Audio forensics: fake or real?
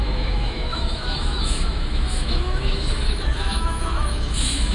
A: fake